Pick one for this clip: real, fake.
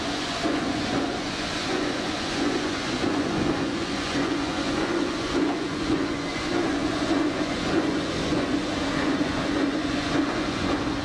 fake